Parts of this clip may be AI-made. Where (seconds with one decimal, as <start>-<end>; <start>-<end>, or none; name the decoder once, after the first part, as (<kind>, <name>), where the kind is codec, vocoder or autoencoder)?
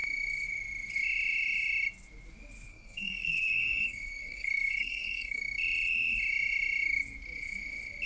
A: 2.7-5.4 (codec, SNAC)